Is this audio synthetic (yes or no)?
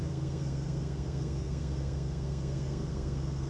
yes